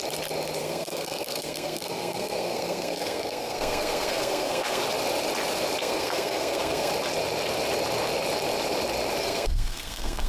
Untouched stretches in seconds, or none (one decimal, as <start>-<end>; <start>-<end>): 0.0-0.6; 4.8-5.8; 6.9-9.2